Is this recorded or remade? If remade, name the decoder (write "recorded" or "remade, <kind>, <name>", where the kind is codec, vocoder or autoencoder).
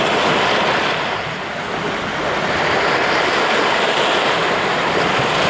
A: recorded